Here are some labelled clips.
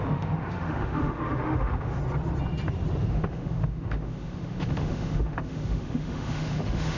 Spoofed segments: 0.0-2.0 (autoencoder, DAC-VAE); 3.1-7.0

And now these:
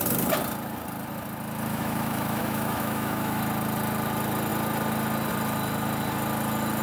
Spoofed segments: 1.7-3.4 (autoencoder, DAC-VAE)

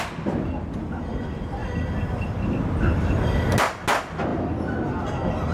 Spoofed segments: none

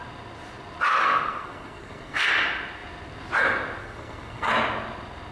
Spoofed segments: 1.0-2.3 (codec, SNAC); 3.8-4.5

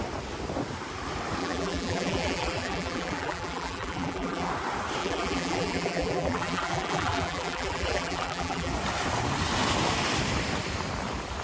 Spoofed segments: 1.4-4.5 (vocoder, BigVGAN v2); 5.0-8.7

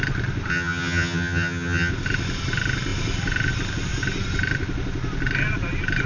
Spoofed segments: 0.5-1.9 (vocoder, HiFi-GAN)

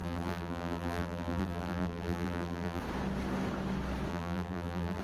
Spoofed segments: 0.0-2.8 (vocoder, BigVGAN v2); 4.1-5.0